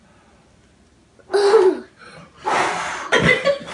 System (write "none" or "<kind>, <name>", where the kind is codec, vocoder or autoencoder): none